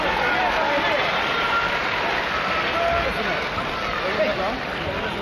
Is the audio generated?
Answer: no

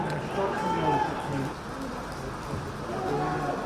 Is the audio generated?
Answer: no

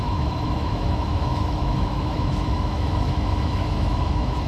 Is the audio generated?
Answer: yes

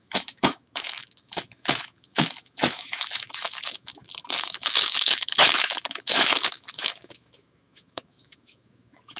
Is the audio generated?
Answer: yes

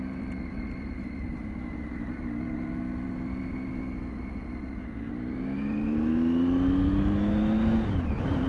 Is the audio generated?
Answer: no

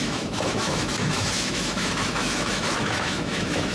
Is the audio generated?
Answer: yes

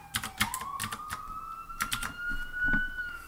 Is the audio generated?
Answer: no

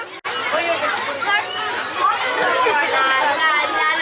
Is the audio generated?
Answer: no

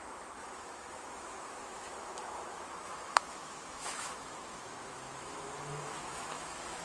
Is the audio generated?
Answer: yes